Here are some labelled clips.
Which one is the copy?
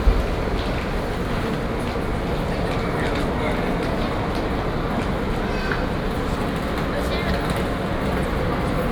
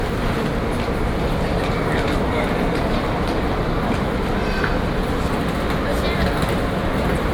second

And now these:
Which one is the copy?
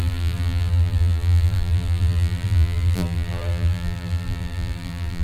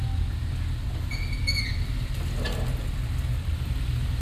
first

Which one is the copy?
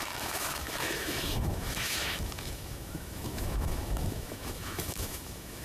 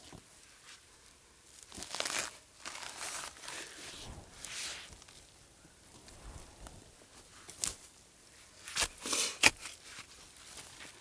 first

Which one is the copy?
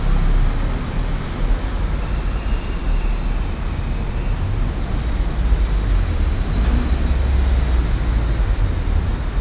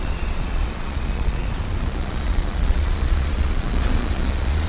second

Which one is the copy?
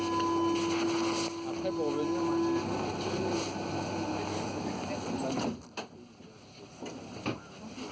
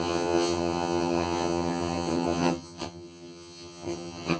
second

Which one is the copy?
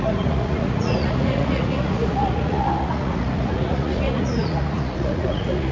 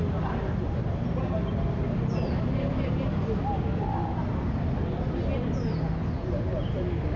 first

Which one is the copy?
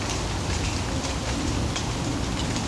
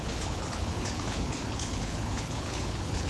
second